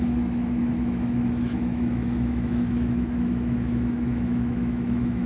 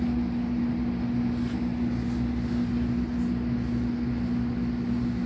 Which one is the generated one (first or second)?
first